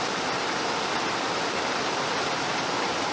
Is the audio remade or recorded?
recorded